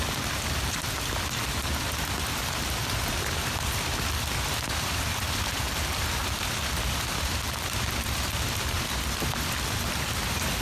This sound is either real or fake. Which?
fake